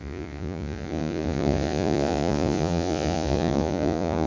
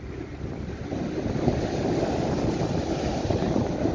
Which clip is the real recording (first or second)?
second